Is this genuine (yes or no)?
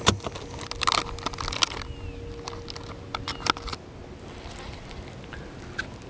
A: yes